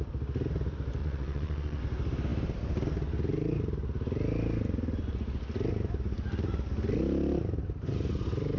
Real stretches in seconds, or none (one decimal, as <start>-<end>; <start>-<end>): 0.0-1.0; 1.8-8.6